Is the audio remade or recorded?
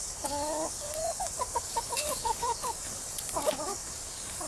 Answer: remade